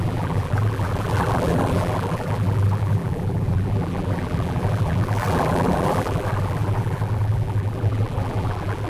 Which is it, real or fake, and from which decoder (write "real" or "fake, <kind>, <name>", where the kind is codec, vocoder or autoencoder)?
fake, vocoder, BigVGAN v2